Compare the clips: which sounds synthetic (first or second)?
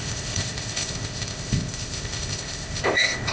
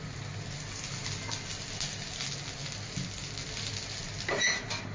first